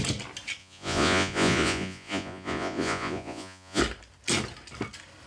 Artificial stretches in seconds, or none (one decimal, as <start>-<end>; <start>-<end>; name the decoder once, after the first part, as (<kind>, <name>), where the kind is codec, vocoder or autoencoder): 0.6-3.8 (vocoder, Vocos)